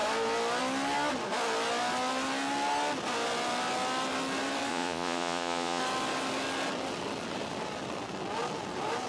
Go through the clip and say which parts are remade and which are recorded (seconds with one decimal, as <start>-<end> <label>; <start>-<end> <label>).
0.0-4.7 recorded; 4.7-5.8 remade; 5.8-9.1 recorded